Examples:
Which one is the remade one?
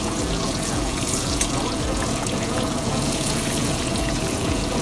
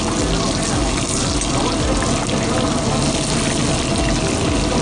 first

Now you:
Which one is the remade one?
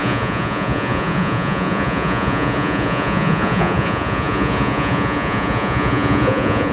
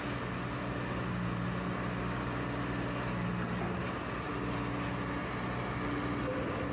first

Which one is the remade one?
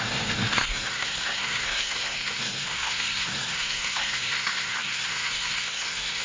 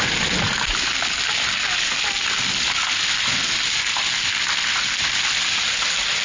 first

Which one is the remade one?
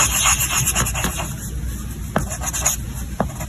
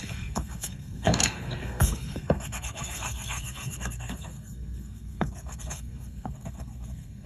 second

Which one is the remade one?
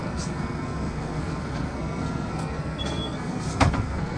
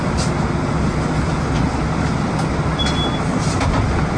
first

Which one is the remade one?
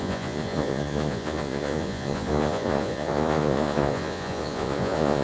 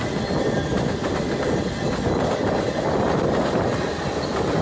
first